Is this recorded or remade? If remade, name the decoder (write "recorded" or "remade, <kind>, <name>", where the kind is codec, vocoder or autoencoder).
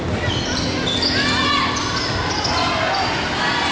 recorded